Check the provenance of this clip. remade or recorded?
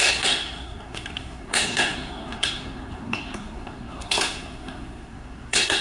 remade